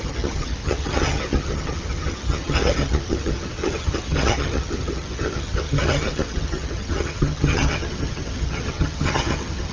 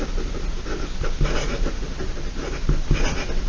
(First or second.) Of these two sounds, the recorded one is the second